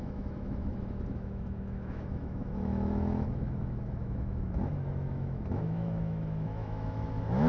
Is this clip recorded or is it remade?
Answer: remade